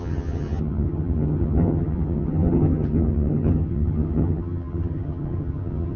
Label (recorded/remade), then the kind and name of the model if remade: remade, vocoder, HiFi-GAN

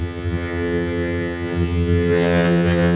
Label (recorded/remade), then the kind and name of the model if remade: remade, vocoder, HiFi-GAN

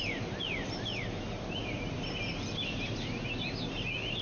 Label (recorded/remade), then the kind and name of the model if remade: recorded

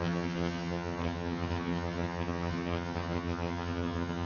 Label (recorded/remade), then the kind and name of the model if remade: remade, vocoder, HiFi-GAN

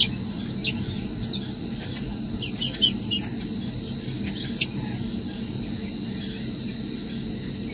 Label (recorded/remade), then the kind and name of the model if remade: recorded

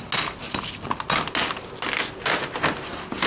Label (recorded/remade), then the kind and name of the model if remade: recorded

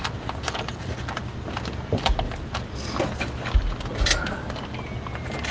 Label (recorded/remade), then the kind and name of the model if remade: recorded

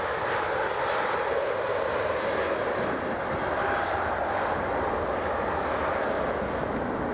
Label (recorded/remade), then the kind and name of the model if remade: recorded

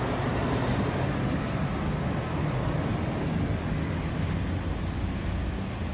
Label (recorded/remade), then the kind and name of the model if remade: recorded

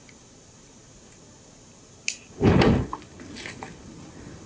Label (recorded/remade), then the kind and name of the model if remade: recorded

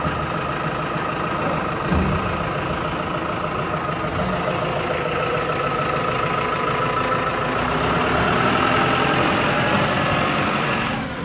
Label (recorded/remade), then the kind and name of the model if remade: recorded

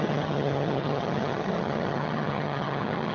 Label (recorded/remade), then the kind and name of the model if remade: remade, vocoder, HiFi-GAN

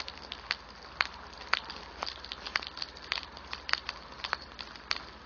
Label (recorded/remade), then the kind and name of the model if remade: recorded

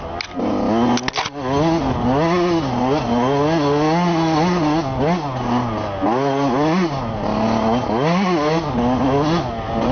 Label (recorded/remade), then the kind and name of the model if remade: recorded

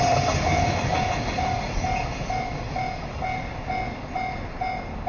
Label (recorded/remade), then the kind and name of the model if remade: recorded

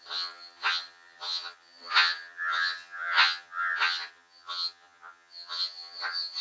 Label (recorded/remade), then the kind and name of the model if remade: remade, vocoder, HiFi-GAN